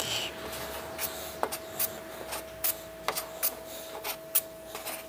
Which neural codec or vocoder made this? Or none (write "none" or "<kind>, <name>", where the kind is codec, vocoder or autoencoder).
none